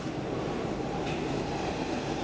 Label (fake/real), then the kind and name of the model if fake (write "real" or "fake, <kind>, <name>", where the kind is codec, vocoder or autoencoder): real